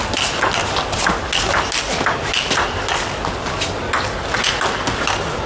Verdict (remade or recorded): recorded